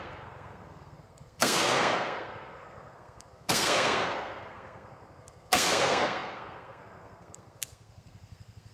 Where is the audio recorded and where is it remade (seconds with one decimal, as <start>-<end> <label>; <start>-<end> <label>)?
0.0-8.7 remade